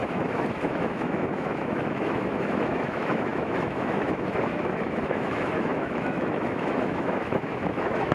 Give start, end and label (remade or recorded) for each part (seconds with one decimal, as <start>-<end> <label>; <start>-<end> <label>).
0.0-8.1 remade